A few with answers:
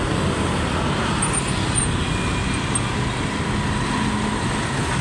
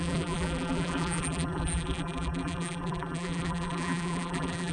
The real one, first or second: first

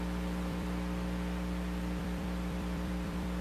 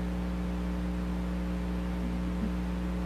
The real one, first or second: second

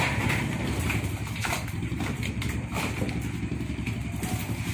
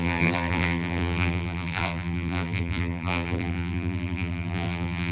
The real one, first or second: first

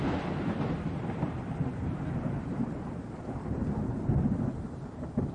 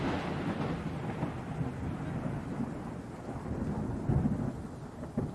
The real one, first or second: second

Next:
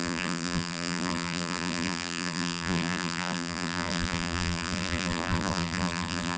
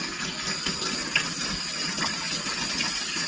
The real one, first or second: second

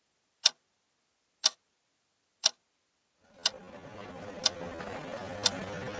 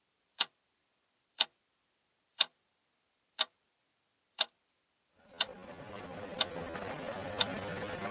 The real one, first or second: first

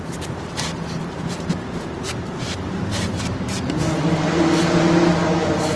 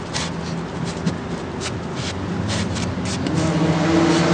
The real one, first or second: second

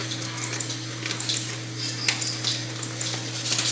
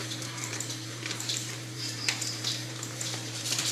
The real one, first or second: first